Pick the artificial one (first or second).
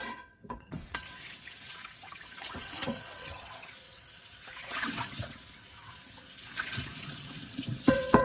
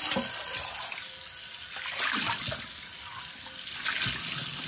first